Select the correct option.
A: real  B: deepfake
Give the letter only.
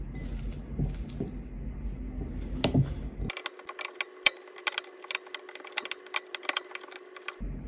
A